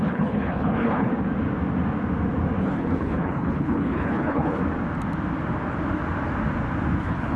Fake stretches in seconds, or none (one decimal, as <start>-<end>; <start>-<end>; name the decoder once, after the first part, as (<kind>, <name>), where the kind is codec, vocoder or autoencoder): 0.0-1.1 (codec, HILCodec); 2.6-4.6; 7.0-7.4